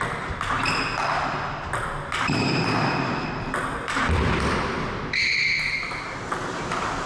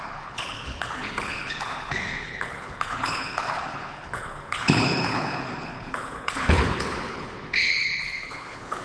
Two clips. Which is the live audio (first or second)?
first